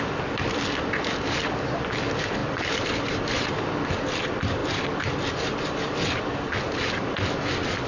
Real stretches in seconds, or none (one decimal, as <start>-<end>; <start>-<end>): 0.0-2.4; 3.7-7.9